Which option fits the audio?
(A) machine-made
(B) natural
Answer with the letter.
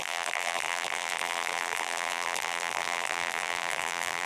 A